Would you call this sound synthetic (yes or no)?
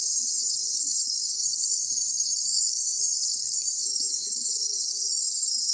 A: yes